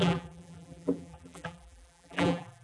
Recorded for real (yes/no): no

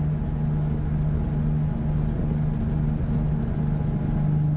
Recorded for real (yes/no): yes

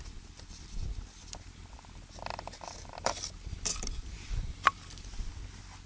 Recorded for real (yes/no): no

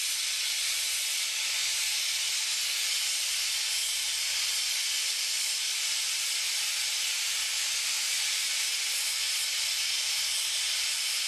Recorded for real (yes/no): yes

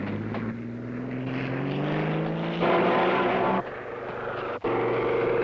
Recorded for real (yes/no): yes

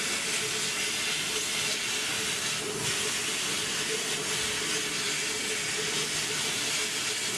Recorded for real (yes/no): yes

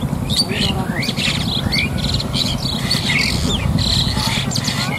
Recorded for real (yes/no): yes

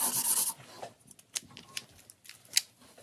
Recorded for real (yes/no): yes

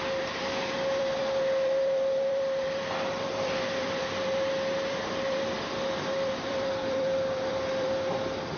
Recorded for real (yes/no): no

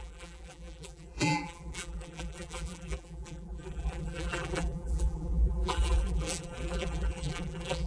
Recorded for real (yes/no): no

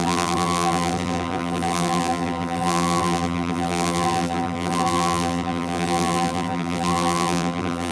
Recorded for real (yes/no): no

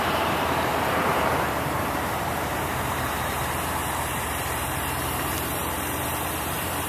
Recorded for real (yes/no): no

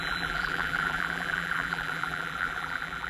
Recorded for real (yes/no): no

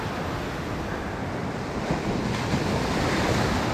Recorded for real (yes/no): yes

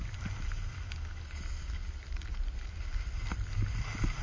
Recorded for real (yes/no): yes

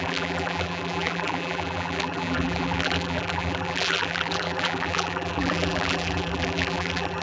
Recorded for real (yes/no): no